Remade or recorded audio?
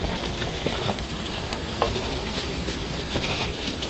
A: remade